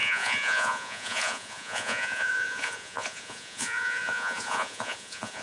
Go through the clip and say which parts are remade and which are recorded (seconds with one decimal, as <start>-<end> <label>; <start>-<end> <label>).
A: 0.0-5.4 remade